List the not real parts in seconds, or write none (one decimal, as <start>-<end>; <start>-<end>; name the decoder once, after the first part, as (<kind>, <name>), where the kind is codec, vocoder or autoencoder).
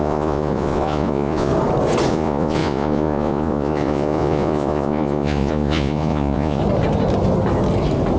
0.0-1.5 (vocoder, Vocos); 2.1-6.6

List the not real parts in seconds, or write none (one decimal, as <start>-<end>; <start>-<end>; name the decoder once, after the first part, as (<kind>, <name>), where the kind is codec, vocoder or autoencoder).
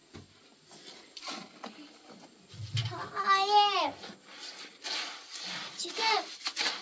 none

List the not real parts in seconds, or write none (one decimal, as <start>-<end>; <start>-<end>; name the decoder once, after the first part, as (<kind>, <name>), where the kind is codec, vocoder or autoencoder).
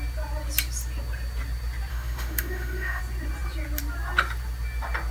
1.9-3.0 (autoencoder, DAC-VAE)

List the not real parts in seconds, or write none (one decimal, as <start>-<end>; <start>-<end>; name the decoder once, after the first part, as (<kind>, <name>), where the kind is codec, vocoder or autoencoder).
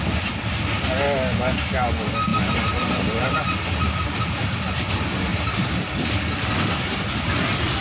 2.3-4.7 (vocoder, BigVGAN v2); 5.3-6.7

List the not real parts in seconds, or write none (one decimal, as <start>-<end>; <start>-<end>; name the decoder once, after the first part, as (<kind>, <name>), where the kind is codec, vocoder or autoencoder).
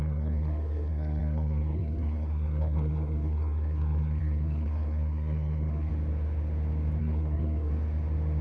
0.0-5.9 (codec, SNAC); 7.0-7.7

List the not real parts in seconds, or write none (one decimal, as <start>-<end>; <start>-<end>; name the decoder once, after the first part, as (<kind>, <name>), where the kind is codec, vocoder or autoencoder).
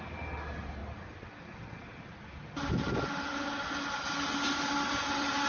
none